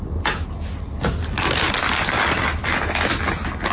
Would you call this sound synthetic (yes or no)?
no